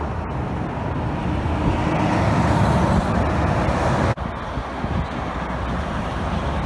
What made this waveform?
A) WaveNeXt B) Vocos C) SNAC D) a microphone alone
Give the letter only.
D